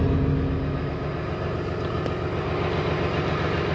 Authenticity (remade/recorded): recorded